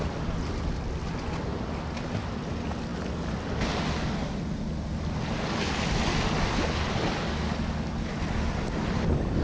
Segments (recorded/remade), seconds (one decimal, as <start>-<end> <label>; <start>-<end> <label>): 0.0-9.4 recorded